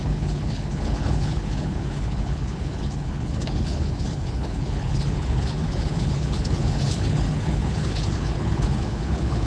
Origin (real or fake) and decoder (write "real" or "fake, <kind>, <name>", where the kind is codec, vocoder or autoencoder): fake, codec, HILCodec